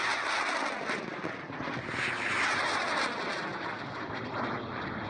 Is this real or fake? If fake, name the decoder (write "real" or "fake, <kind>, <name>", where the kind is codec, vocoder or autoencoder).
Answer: real